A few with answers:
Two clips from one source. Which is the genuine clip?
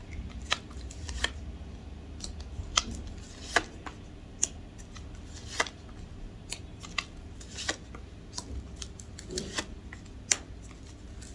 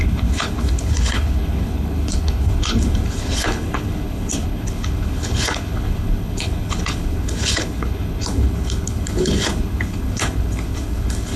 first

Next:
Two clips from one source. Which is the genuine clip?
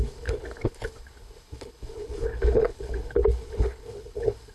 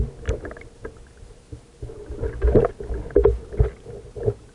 second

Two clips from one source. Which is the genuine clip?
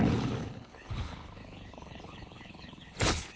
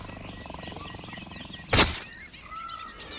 second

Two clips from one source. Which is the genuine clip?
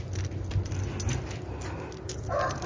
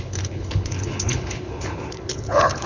first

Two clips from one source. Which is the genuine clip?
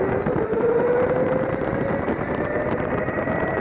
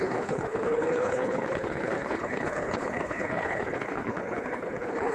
first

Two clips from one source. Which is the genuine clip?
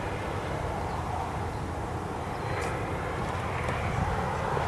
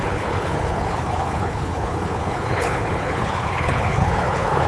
first